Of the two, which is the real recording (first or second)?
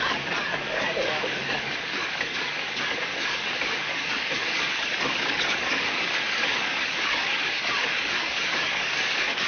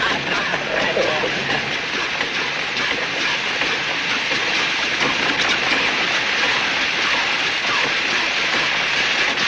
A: second